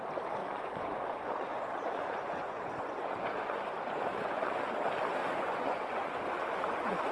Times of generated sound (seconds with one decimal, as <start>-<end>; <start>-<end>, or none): 0.4-3.6; 4.1-4.7; 5.2-7.1

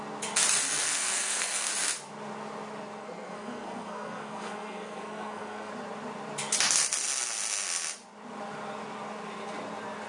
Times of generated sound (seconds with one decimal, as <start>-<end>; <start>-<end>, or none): 0.8-1.7; 3.0-5.7

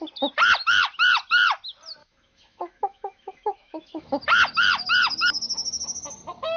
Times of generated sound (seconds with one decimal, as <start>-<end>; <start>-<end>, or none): 2.0-4.1

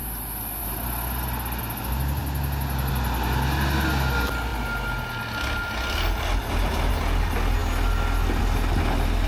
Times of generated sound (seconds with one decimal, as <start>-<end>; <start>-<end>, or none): none